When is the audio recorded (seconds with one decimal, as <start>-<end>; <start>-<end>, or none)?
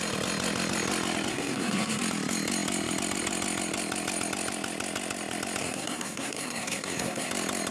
0.0-1.3; 2.0-5.6; 7.3-7.7